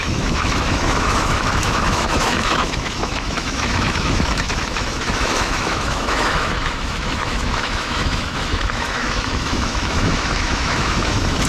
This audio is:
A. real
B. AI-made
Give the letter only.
B